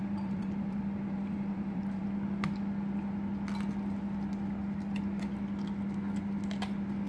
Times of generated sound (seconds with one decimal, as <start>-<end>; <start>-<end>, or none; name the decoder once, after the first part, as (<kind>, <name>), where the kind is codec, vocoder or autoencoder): 0.0-2.0 (vocoder, BigVGAN v2)